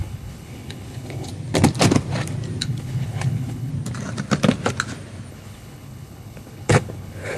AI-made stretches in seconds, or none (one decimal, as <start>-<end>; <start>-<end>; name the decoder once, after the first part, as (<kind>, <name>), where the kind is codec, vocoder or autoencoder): 0.0-1.3 (codec, HILCodec); 2.6-3.7; 5.3-7.4